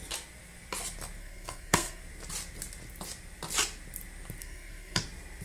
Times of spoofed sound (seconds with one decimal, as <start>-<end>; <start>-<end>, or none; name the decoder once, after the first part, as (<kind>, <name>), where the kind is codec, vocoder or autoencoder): 1.2-2.0 (codec, SNAC); 4.4-5.0